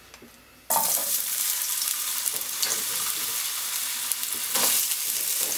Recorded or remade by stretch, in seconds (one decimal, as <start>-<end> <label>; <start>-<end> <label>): 0.0-1.0 recorded; 1.0-3.4 remade; 3.4-5.6 recorded